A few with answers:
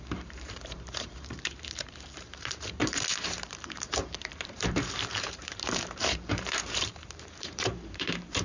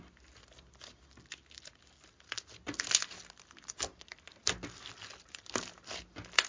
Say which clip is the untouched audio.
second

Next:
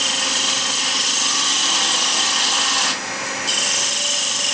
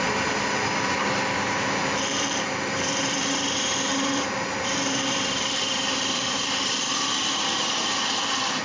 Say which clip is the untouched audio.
first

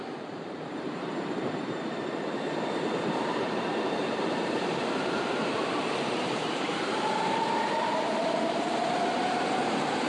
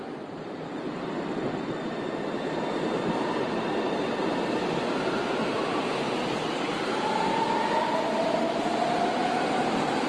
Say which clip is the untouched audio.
second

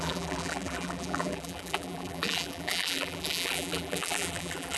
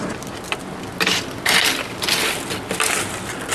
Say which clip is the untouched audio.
second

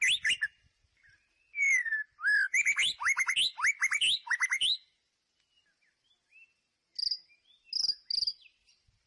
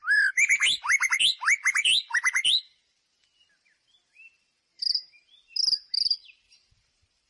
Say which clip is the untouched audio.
first